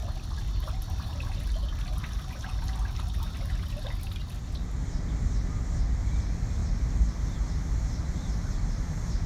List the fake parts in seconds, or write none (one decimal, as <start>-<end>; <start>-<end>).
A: none